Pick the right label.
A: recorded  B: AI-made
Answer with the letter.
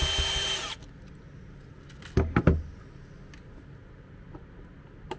A